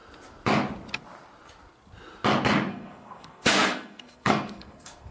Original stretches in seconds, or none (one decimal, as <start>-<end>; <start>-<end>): 0.0-2.7